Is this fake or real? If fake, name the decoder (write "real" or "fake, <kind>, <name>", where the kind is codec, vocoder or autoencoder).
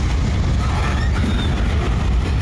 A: real